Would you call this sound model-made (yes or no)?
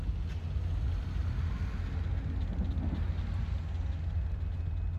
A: no